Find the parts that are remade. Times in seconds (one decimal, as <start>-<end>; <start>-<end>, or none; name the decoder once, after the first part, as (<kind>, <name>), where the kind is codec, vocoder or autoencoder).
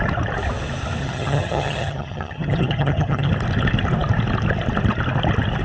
1.0-3.3 (vocoder, HiFi-GAN)